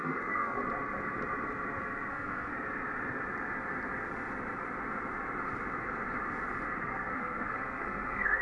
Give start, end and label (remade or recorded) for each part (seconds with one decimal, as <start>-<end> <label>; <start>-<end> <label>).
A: 0.0-0.6 remade; 0.6-2.1 recorded; 2.1-2.5 remade; 2.5-6.8 recorded; 6.8-8.4 remade